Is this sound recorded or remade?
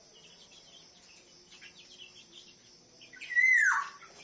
recorded